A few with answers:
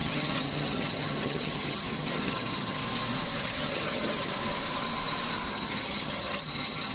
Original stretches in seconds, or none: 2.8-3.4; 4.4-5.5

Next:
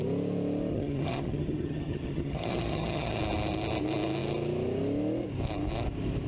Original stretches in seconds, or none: 0.0-0.7; 3.2-6.3

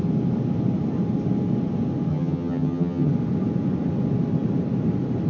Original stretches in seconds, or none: 0.0-2.1; 3.1-5.3

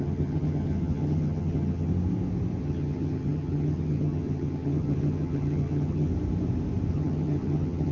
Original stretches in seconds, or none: 1.9-2.6; 6.1-6.9

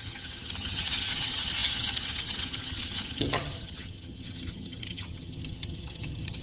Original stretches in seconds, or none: none

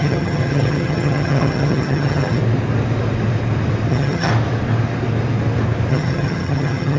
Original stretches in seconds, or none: 2.4-3.9; 4.3-5.9

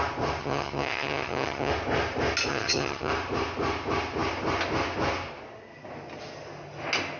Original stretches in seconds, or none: 0.0-0.4; 1.7-2.5; 3.1-7.2